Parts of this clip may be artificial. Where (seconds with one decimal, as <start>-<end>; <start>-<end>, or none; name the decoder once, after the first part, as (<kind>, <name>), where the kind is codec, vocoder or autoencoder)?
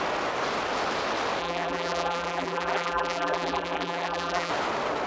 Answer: 1.4-4.5 (vocoder, BigVGAN v2)